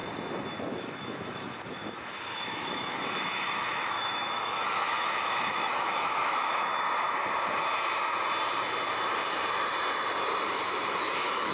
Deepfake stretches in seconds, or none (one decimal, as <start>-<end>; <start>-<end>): 0.6-6.7; 11.0-11.5